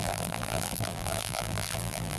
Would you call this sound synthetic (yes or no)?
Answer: yes